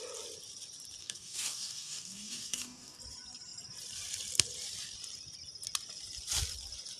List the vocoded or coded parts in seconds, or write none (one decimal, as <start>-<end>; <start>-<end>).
1.0-3.0